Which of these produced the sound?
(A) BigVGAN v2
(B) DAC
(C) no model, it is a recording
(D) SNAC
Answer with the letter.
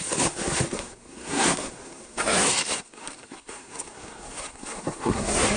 D